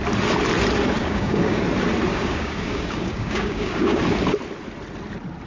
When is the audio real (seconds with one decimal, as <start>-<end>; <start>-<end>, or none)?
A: 0.0-1.0; 1.6-2.1; 4.0-5.5